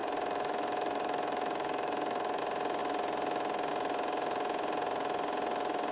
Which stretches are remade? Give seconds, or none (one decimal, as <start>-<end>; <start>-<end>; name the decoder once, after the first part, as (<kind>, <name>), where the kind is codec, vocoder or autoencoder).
0.0-2.4 (autoencoder, DAC-VAE)